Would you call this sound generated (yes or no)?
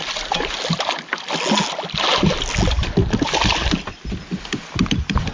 no